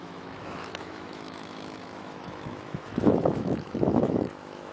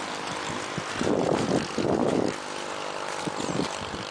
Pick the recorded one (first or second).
second